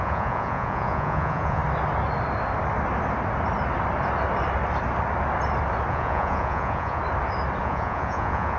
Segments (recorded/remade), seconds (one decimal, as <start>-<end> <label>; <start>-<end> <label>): 0.0-1.6 remade; 1.6-5.9 recorded; 5.9-7.0 remade; 7.0-7.6 recorded; 7.6-8.6 remade